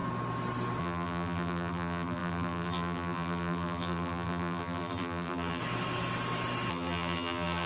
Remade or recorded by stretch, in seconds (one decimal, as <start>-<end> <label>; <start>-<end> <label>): 0.0-0.8 recorded; 0.8-5.6 remade; 5.6-6.7 recorded; 6.7-7.7 remade